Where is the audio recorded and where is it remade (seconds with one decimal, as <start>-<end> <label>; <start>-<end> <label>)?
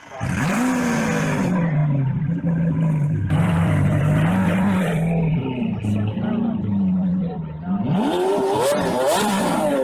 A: 0.0-1.8 remade; 1.8-3.0 recorded; 3.0-9.8 remade